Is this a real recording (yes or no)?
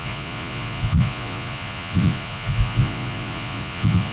no